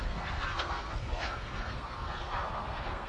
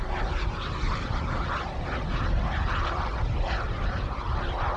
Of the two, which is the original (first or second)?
second